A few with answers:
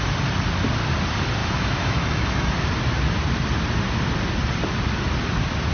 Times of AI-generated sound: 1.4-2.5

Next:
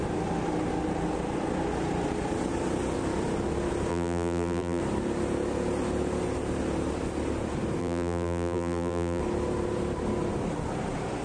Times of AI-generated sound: 3.9-4.8; 7.8-9.2

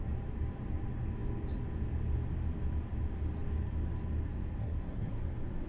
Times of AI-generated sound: 4.6-5.2

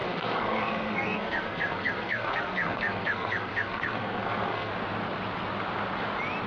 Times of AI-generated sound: 0.0-4.7

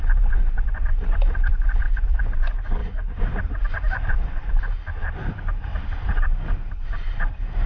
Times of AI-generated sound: none

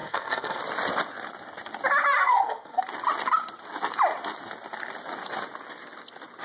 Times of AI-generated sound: 0.0-0.6; 2.2-2.8